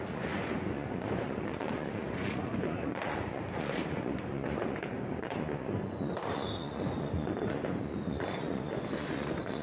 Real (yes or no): no